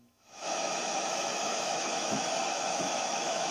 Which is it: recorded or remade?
remade